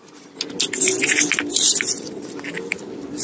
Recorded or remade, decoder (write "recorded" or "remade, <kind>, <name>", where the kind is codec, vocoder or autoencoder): recorded